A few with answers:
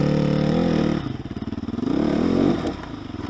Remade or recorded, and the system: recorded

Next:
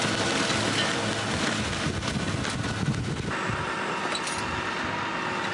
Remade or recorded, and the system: recorded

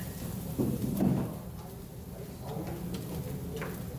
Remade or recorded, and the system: recorded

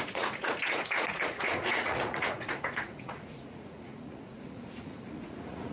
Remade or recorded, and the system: remade, vocoder, Vocos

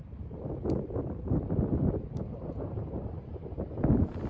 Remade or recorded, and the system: recorded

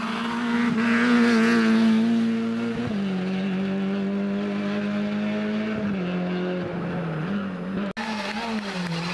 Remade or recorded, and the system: recorded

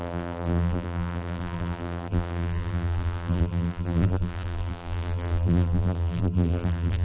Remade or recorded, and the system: remade, vocoder, BigVGAN v2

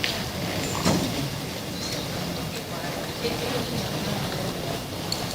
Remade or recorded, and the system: recorded